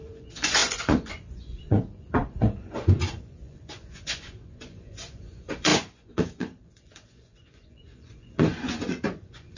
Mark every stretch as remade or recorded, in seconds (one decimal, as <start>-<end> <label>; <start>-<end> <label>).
0.0-9.6 remade

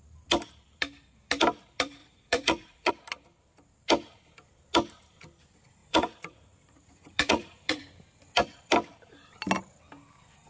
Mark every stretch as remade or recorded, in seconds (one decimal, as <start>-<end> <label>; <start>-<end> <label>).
0.0-2.0 recorded; 2.0-2.9 remade; 2.9-5.8 recorded; 5.8-7.8 remade; 7.8-10.5 recorded

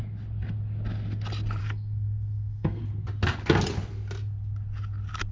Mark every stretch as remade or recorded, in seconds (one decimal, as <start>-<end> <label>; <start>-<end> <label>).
0.0-1.6 recorded; 1.6-2.8 remade; 2.8-5.3 recorded

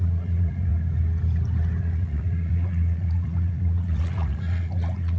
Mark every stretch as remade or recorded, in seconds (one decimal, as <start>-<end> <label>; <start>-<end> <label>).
0.0-0.7 remade; 0.7-1.8 recorded; 1.8-5.2 remade